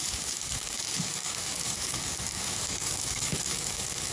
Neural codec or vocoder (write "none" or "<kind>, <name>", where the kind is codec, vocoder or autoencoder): codec, DAC